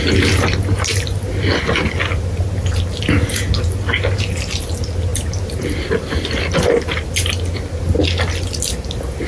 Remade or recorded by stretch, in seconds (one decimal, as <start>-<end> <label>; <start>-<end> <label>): 0.0-9.3 recorded